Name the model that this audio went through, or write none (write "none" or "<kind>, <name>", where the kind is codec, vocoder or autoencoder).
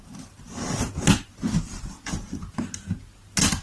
none